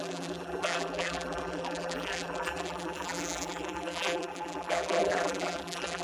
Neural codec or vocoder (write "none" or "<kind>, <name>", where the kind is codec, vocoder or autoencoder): vocoder, BigVGAN v2